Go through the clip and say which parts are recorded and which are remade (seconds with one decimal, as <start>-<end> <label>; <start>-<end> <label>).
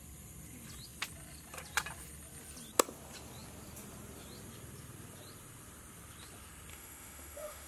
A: 0.0-6.7 recorded; 6.7-7.7 remade